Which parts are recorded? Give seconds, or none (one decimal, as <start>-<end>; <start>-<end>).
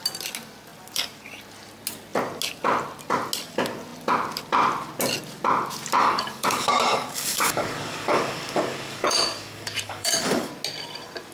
0.0-6.0; 10.5-11.3